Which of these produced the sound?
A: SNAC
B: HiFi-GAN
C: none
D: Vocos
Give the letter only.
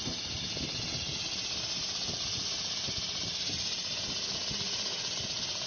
C